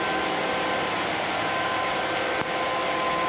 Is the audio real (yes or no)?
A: yes